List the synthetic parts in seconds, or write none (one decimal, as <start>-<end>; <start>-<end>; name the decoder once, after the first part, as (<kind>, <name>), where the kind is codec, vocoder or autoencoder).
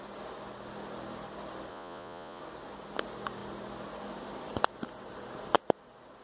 1.7-2.4 (vocoder, Vocos)